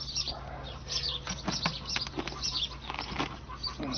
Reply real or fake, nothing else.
real